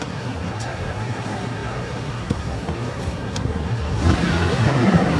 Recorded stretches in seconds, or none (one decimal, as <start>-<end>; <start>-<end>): none